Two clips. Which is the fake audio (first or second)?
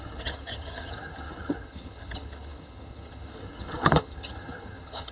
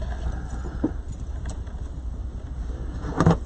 first